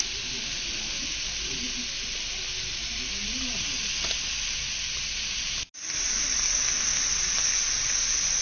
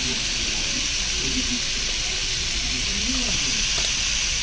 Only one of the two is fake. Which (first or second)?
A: second